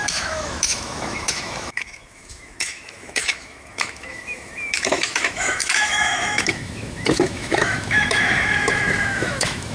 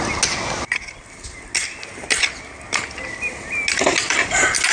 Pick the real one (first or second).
second